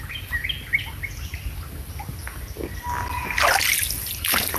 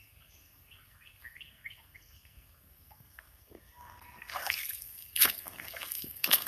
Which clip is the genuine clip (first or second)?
first